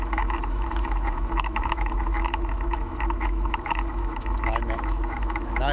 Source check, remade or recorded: remade